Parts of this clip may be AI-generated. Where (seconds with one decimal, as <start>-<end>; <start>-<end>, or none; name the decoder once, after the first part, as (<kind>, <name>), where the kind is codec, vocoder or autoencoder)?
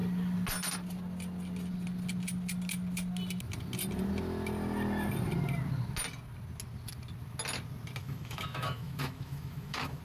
8.0-10.0 (autoencoder, DAC-VAE)